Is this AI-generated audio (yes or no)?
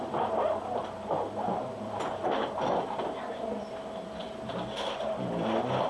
no